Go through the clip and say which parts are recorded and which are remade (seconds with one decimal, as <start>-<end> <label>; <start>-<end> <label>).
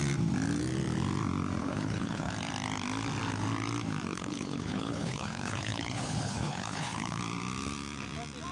0.0-1.6 recorded; 1.6-2.3 remade; 2.3-4.1 recorded; 4.1-7.2 remade; 7.2-8.5 recorded